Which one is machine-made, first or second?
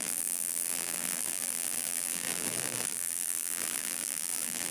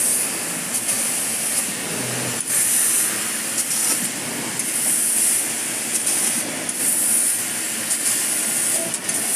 first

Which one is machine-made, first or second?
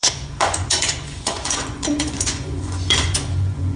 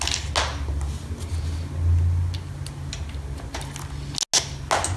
first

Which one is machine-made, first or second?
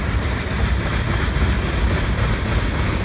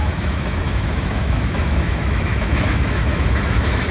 second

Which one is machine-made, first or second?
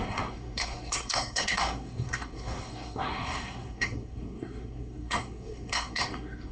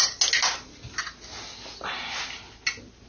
first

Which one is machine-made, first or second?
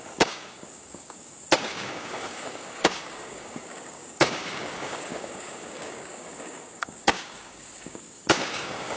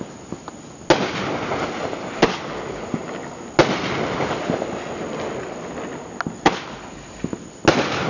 first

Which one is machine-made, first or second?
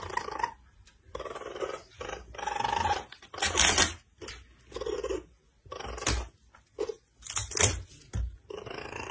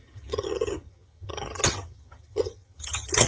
second